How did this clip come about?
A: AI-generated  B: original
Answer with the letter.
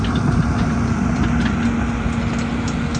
B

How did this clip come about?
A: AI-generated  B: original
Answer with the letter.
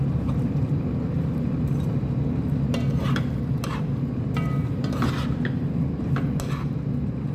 B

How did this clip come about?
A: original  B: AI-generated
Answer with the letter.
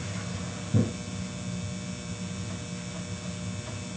A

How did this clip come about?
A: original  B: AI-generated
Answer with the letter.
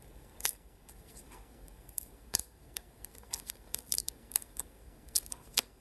B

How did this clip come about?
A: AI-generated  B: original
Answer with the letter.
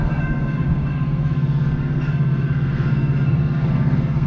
A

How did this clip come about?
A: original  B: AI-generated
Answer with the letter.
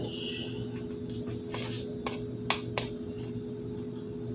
A